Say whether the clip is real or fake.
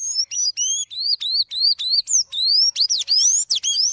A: fake